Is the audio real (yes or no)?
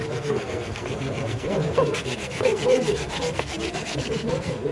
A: no